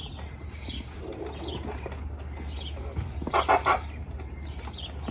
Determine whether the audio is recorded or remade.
recorded